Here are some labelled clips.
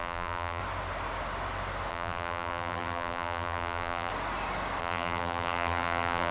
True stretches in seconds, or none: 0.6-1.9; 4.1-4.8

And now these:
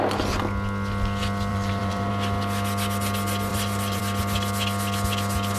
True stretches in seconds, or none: 0.0-1.5; 2.1-3.5; 4.0-5.6

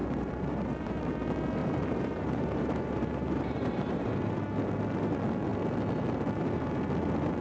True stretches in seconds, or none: 1.0-1.6; 4.3-7.4

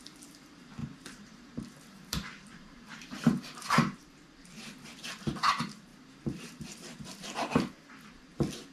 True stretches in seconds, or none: 0.0-0.8; 4.0-5.9; 8.2-8.7

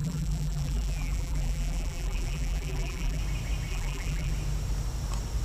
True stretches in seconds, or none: 3.2-3.7; 4.3-5.4

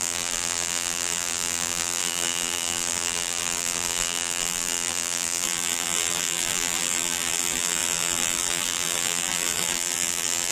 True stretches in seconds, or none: none

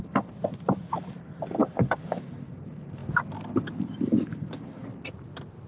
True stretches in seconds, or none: 3.0-3.8; 4.8-5.7